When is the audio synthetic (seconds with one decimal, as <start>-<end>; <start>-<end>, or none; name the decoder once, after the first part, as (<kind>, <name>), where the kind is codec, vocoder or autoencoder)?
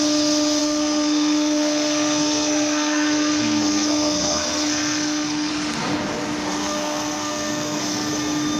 0.6-5.5 (codec, SNAC); 6.6-8.1